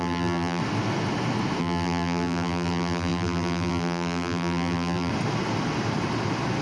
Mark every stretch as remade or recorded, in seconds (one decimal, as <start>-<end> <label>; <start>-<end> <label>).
0.0-0.6 remade; 0.6-1.6 recorded; 1.6-5.1 remade; 5.1-6.6 recorded